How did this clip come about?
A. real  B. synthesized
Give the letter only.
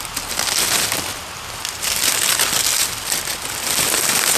A